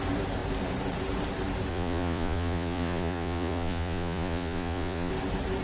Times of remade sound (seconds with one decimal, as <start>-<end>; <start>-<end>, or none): 1.7-5.1